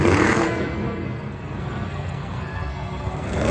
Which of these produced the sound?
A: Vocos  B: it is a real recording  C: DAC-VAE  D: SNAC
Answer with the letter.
D